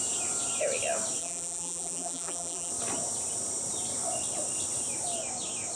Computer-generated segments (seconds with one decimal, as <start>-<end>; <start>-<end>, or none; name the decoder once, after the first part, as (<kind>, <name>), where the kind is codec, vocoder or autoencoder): 1.2-2.7 (vocoder, BigVGAN v2)

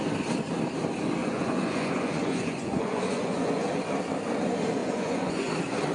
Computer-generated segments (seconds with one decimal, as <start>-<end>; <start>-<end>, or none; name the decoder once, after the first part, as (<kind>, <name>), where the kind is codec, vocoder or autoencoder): 1.2-3.7 (vocoder, Vocos); 4.8-5.5

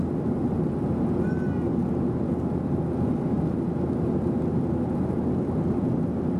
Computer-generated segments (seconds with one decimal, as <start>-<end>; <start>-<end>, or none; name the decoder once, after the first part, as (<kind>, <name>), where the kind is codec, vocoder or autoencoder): none

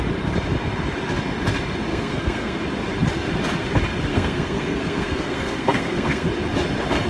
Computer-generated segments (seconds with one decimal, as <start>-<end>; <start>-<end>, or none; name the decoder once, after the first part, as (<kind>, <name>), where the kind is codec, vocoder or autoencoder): 1.9-2.6 (codec, SNAC); 4.1-6.3

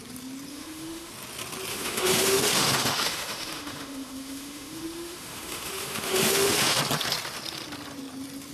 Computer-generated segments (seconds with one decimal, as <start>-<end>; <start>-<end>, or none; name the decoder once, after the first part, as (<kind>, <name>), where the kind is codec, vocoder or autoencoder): 0.5-1.1 (autoencoder, DAC-VAE); 1.7-6.8

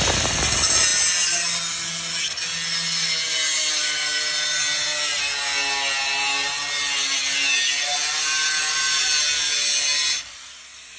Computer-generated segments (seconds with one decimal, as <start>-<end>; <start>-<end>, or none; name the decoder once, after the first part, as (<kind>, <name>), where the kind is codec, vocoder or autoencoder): none